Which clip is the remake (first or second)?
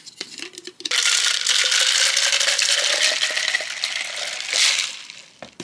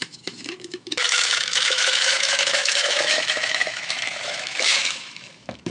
second